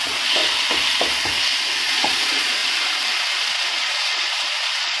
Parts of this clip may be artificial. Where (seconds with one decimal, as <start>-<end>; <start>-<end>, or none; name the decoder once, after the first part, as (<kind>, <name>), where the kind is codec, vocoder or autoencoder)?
0.0-0.4 (vocoder, Vocos); 1.8-2.6; 3.5-5.0